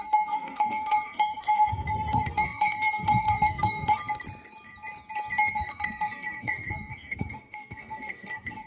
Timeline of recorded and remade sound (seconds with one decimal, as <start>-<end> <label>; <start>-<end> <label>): 0.0-4.0 remade; 4.0-5.5 recorded; 5.5-8.7 remade

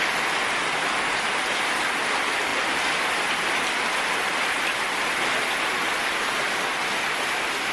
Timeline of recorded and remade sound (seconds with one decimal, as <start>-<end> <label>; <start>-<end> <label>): 0.0-7.7 recorded

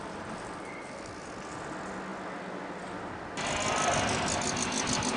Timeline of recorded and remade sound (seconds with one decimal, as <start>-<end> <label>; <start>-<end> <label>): 0.0-5.2 recorded

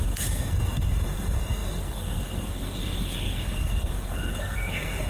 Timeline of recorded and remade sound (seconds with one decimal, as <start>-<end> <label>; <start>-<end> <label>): 0.0-5.1 remade

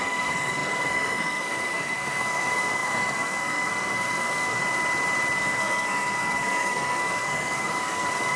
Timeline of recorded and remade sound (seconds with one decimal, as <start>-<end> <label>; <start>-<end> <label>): 0.0-4.6 remade; 4.6-5.4 recorded; 5.4-8.4 remade

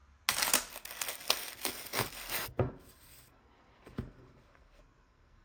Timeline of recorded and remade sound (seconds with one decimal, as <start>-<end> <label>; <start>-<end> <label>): 0.0-0.7 recorded; 0.7-5.4 remade